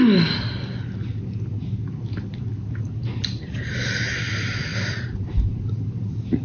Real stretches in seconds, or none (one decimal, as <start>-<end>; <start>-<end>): 0.0-4.7; 5.8-6.4